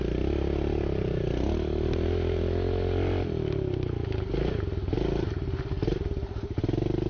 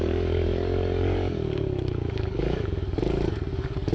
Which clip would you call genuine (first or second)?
first